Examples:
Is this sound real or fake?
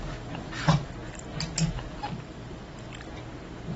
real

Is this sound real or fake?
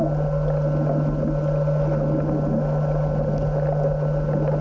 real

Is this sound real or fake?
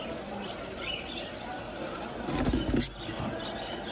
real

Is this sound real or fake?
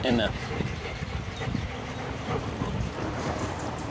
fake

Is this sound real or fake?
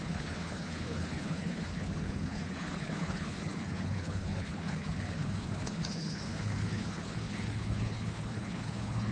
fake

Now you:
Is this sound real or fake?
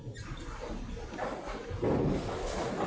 real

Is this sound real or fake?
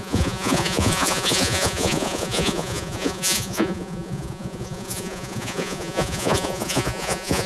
fake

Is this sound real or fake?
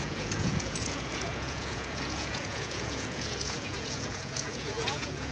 fake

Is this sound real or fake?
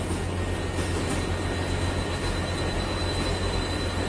real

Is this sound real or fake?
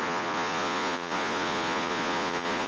fake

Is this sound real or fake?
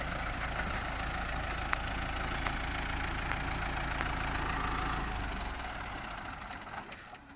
real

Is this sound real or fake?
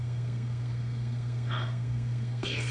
fake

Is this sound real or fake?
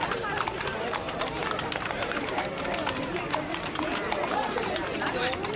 fake